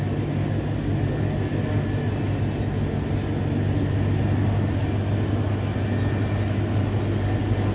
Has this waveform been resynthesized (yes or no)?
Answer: no